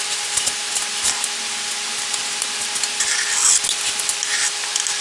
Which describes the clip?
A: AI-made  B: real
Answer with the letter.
B